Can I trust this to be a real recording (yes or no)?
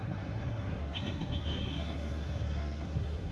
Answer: no